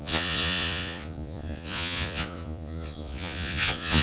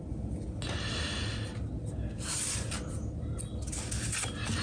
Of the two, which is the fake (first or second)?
first